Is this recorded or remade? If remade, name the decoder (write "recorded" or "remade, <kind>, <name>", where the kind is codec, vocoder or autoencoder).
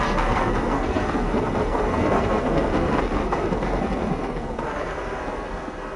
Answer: remade, codec, SNAC